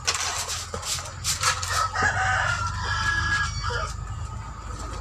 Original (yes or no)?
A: yes